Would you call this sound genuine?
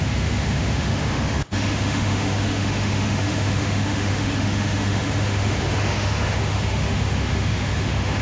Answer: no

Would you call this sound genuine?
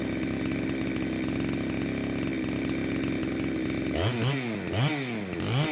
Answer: yes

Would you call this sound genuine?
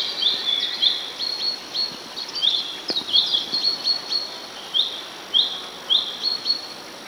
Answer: yes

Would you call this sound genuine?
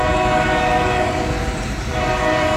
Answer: no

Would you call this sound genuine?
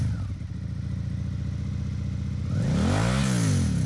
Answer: yes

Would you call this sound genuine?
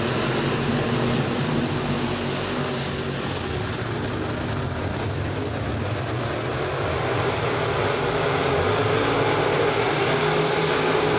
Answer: yes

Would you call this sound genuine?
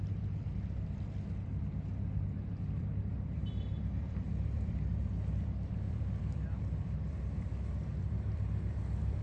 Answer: no